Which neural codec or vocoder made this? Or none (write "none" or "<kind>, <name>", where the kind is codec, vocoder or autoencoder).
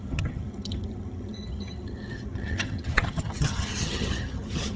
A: vocoder, HiFi-GAN